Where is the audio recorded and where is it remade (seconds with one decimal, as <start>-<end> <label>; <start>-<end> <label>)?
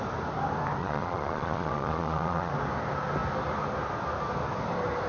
0.0-0.8 recorded; 0.8-2.5 remade; 2.5-5.1 recorded